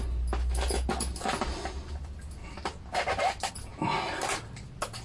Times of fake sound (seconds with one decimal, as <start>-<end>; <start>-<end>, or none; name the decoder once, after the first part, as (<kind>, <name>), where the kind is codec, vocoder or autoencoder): none